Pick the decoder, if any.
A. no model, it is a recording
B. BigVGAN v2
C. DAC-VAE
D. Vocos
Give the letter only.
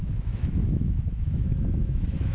C